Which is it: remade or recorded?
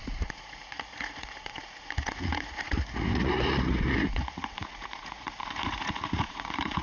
remade